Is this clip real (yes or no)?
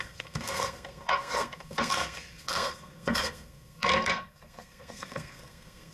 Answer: no